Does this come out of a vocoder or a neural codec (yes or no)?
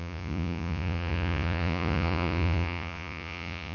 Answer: yes